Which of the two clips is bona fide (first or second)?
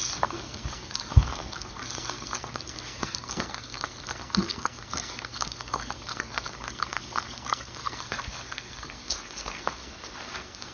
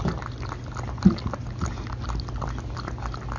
second